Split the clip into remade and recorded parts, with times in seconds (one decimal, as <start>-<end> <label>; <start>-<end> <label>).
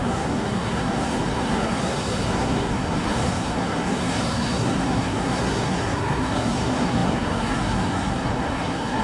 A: 0.0-9.0 remade